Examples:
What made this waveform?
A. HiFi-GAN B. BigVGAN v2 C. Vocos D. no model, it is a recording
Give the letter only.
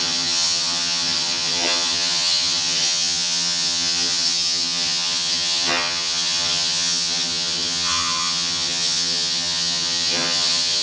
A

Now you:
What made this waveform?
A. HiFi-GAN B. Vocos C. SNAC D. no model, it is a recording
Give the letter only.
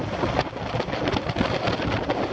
D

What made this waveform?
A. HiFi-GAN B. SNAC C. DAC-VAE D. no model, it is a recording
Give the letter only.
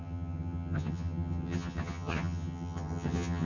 A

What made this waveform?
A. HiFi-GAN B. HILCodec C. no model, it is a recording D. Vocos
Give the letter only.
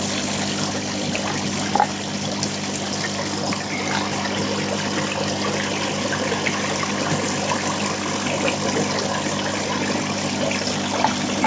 C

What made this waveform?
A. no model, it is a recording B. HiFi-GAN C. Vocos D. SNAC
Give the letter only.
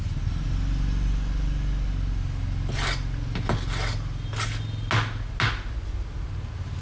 A